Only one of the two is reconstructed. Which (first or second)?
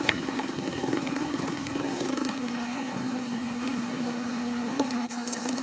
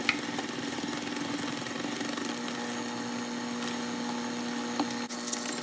first